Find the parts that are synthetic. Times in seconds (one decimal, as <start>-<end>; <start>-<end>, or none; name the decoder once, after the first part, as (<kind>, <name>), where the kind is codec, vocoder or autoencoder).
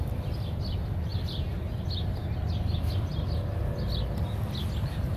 1.1-1.9 (vocoder, BigVGAN v2)